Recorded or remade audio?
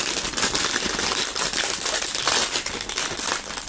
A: recorded